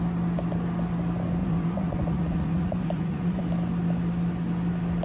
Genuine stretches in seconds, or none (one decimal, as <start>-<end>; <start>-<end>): 0.0-1.4; 3.4-5.0